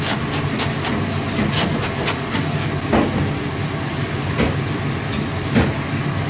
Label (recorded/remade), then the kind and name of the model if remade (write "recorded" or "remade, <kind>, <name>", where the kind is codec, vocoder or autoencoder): recorded